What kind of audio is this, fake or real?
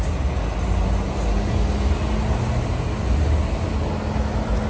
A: real